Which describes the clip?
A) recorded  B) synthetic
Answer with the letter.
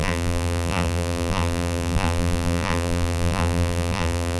B